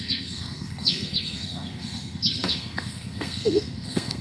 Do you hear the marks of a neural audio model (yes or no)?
yes